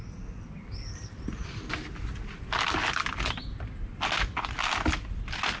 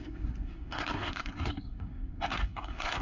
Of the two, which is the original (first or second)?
first